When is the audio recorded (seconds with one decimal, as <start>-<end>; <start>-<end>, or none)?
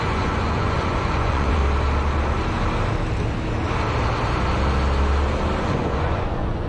1.6-5.6